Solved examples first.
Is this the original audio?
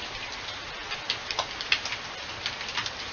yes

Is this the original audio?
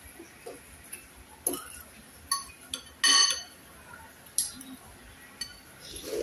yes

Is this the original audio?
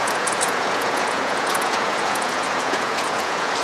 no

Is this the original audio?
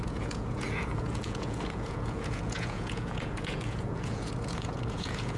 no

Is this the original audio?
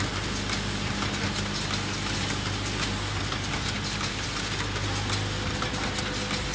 yes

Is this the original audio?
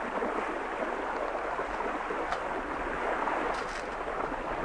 yes